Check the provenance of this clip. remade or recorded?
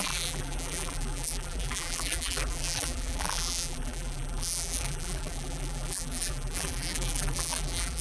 remade